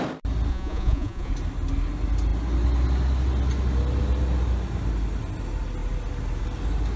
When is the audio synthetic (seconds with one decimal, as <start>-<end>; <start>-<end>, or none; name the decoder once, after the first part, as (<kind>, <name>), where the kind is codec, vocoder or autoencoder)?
0.5-1.3 (vocoder, Vocos)